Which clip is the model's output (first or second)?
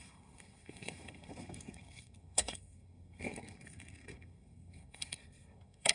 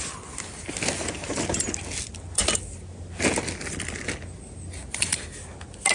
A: first